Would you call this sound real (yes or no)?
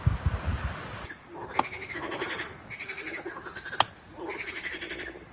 yes